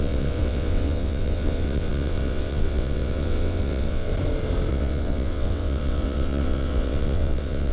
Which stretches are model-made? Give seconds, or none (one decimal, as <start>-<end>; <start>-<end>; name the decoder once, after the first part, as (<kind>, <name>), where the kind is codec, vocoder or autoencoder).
0.0-4.1 (vocoder, WaveNeXt); 4.7-7.7